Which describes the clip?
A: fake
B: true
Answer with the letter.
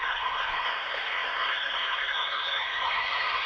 A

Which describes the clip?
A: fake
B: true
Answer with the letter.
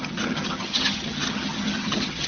A